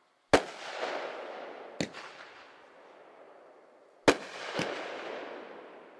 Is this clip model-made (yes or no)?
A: no